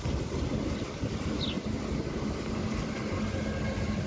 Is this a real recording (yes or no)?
yes